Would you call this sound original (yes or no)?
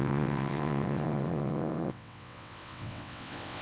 no